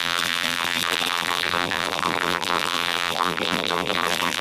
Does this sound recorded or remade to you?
remade